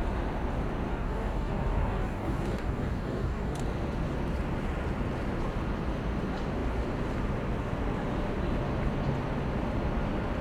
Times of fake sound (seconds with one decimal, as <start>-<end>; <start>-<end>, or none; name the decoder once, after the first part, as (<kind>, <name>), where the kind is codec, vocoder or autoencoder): 0.9-3.6 (codec, DAC)